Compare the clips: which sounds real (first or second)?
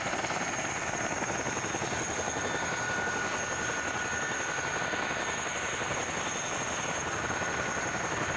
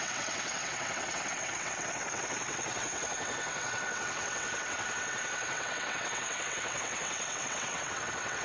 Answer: first